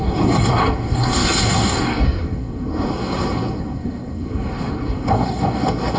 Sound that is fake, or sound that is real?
fake